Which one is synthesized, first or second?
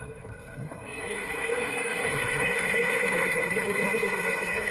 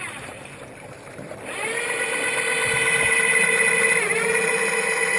first